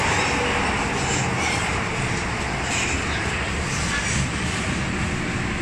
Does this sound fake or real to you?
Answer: real